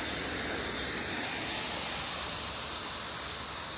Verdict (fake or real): real